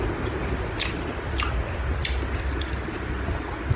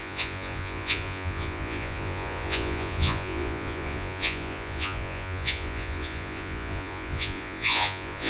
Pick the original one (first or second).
first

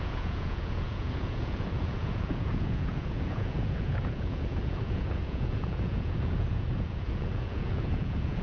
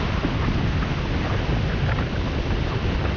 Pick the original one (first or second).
second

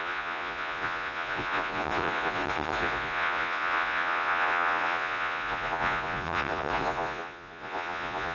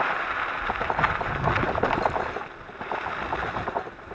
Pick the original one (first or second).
second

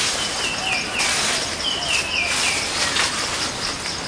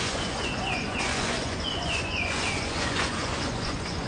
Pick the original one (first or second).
first